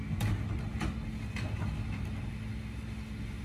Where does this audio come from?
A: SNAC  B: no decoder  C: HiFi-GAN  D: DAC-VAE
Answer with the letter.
B